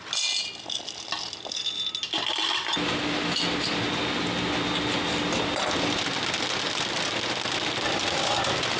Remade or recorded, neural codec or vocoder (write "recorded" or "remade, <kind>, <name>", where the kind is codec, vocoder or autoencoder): recorded